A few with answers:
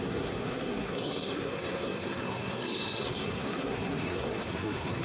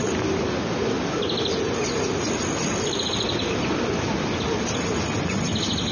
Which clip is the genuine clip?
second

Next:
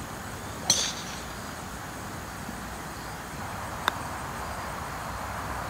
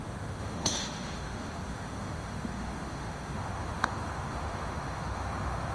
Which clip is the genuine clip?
first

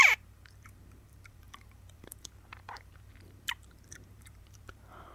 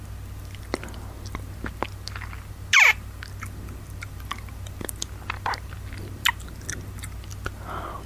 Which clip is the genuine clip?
second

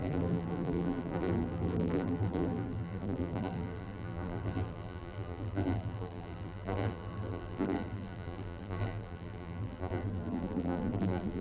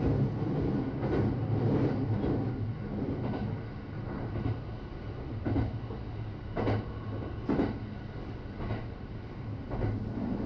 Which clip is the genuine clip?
second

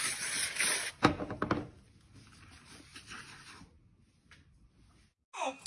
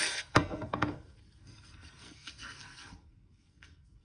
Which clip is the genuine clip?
first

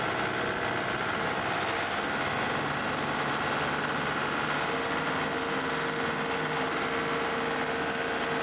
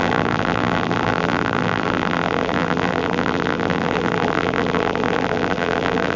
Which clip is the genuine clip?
first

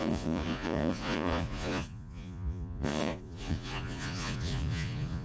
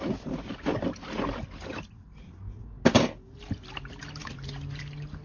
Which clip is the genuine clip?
second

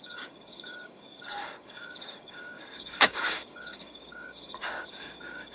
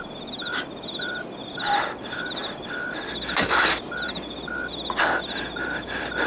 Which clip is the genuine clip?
second